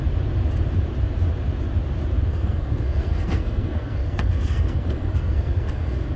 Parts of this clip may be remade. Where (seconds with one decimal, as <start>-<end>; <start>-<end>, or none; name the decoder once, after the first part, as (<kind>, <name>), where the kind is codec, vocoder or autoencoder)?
2.3-6.2 (codec, SNAC)